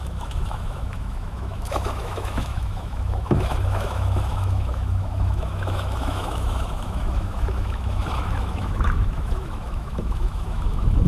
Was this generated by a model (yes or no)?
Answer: yes